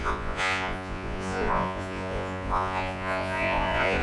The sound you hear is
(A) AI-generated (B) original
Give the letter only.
A